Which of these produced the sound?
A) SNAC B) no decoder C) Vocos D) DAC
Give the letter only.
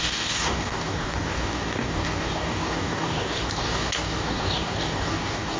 D